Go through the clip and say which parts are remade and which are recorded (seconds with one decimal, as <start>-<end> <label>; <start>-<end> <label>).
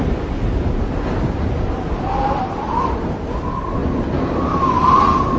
0.0-5.4 recorded